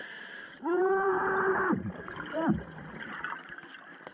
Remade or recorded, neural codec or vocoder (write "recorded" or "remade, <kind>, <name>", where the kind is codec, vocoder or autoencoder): remade, vocoder, BigVGAN v2